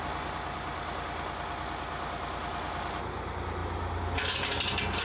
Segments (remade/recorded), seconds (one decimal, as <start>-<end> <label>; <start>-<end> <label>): 0.0-5.0 recorded